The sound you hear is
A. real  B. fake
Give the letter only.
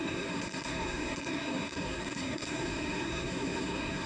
B